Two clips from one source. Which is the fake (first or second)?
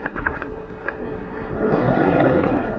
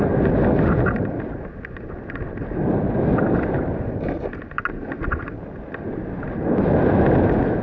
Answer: first